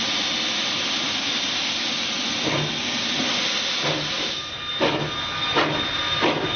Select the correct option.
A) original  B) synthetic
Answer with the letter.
A